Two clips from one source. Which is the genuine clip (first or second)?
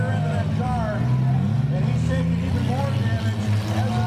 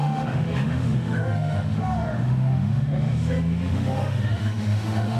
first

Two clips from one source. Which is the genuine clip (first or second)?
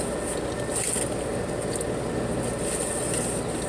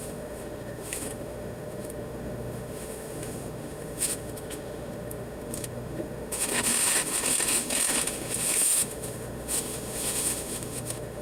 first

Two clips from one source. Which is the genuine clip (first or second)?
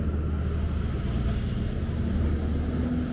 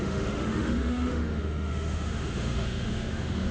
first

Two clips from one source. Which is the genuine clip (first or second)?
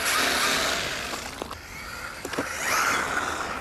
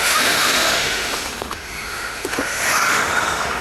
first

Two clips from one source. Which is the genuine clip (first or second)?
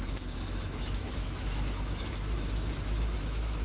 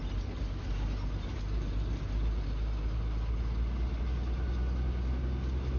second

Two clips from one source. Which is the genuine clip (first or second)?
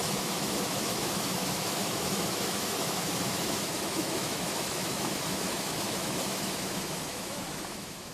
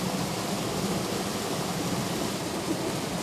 second